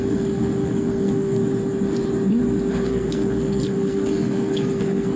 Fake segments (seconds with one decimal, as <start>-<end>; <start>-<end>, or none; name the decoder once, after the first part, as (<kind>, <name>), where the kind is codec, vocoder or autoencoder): 0.0-1.4 (codec, SNAC); 2.7-5.2